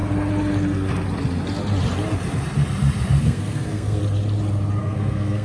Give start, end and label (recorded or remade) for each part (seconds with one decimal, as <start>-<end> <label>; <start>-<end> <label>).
0.0-3.2 recorded; 3.2-4.0 remade; 4.0-4.8 recorded; 4.8-5.4 remade